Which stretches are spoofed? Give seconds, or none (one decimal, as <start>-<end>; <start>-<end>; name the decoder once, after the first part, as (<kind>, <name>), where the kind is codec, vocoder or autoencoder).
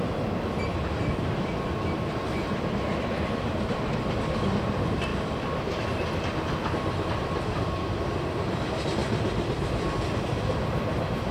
none